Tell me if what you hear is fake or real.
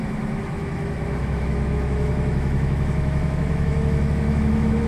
fake